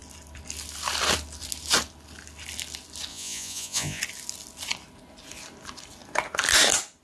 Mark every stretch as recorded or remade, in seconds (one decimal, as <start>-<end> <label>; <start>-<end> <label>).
0.0-3.1 recorded; 3.1-4.0 remade; 4.0-7.0 recorded